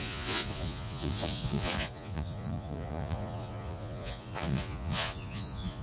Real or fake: fake